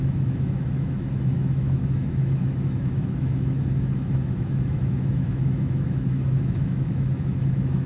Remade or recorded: remade